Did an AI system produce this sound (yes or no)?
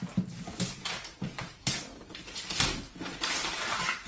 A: no